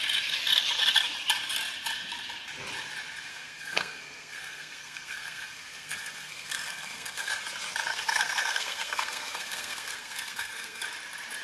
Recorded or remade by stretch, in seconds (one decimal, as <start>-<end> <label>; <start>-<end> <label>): 0.0-3.3 recorded; 3.3-7.3 remade; 7.3-7.9 recorded; 7.9-10.8 remade; 10.8-11.4 recorded